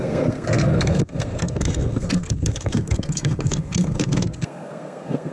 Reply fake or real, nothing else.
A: fake